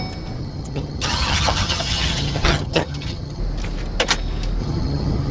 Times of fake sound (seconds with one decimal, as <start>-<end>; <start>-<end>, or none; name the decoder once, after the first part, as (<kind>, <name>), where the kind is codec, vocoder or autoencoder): 0.4-3.4 (vocoder, HiFi-GAN); 4.6-5.3

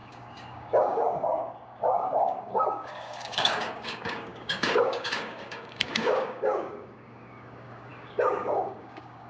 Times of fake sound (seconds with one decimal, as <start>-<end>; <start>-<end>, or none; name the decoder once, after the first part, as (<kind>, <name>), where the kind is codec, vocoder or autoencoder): 0.0-9.3 (codec, DAC)

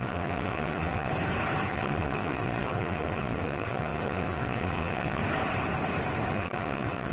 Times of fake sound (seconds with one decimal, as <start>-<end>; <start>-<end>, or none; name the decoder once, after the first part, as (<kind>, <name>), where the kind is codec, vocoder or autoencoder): 0.0-1.1 (vocoder, WaveNeXt); 1.7-5.2; 6.3-7.1